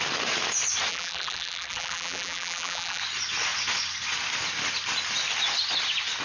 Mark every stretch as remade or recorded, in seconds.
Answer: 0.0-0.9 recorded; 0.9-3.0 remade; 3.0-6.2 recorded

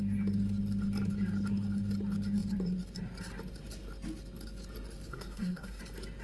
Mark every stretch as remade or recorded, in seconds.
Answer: 0.0-5.1 recorded; 5.1-5.8 remade; 5.8-6.2 recorded

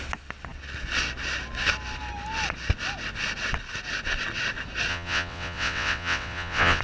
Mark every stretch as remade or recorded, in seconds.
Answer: 0.0-4.9 recorded; 4.9-6.8 remade

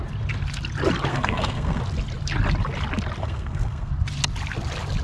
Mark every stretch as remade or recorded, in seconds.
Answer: 0.0-1.1 recorded; 1.1-1.8 remade; 1.8-3.2 recorded; 3.2-3.9 remade; 3.9-5.0 recorded

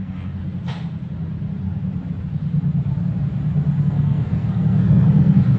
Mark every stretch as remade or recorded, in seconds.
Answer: 0.0-0.4 remade; 0.4-3.8 recorded; 3.8-5.6 remade

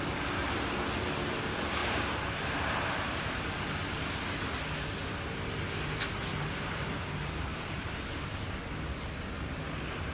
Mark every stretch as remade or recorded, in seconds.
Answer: 0.0-1.8 recorded; 1.8-3.2 remade; 3.2-6.3 recorded; 6.3-7.9 remade; 7.9-10.1 recorded